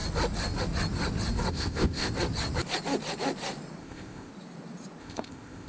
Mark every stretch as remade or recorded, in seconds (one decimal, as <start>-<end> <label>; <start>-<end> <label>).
0.0-1.5 recorded; 1.5-2.1 remade; 2.1-3.8 recorded; 3.8-4.3 remade; 4.3-5.0 recorded; 5.0-5.7 remade